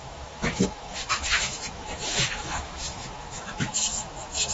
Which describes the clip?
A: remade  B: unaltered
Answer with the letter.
A